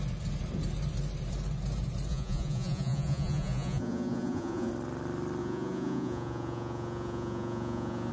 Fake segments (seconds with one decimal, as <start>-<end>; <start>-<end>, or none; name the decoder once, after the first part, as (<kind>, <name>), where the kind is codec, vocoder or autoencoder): 2.1-4.7 (vocoder, Vocos); 5.4-8.1